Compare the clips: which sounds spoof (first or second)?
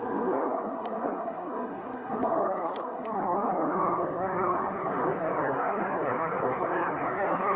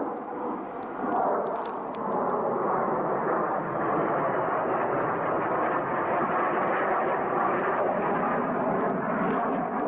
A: first